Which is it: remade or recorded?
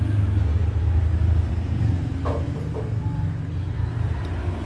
recorded